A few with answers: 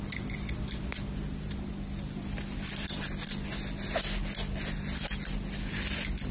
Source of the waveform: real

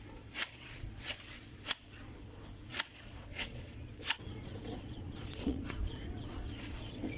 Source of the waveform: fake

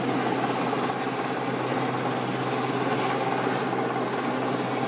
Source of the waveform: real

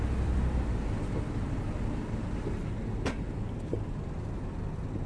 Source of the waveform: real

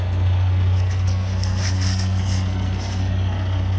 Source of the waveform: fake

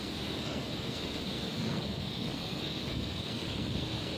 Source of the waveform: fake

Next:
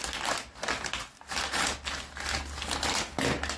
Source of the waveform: real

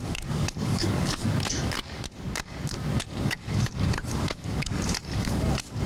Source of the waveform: fake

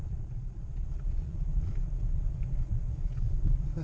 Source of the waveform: fake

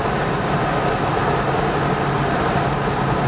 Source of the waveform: real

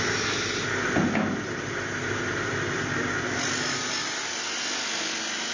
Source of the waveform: real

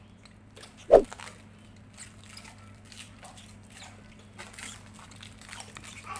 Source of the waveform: real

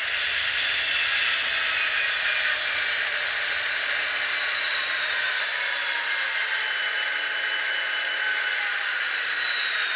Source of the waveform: real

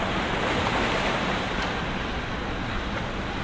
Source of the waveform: real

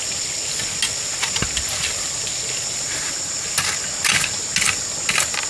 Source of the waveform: real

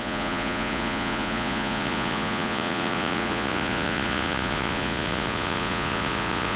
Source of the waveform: fake